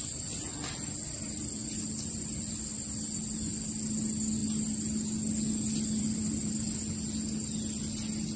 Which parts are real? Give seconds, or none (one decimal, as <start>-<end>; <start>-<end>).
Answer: 0.0-8.4